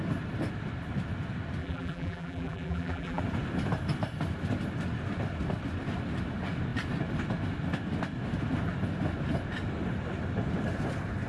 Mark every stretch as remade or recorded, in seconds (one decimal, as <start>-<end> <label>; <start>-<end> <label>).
0.0-1.6 recorded; 1.6-3.2 remade; 3.2-11.3 recorded